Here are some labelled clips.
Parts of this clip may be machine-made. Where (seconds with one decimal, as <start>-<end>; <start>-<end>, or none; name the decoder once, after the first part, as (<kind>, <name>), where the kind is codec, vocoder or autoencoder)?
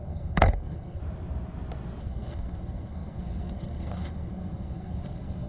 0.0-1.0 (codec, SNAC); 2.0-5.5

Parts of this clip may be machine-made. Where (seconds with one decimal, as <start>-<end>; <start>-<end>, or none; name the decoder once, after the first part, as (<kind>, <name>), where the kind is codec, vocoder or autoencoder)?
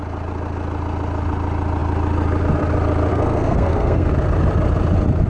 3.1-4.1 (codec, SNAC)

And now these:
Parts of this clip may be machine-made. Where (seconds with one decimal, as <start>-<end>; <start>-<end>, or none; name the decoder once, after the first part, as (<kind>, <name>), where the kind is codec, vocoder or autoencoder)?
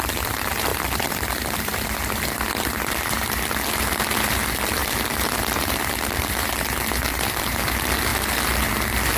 0.0-4.8 (vocoder, BigVGAN v2); 7.3-8.1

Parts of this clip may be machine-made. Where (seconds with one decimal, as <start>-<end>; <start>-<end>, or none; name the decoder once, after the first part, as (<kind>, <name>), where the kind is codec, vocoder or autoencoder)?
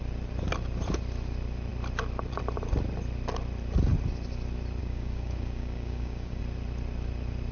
4.8-6.4 (codec, DAC)